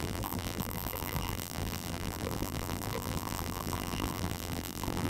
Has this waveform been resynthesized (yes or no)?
yes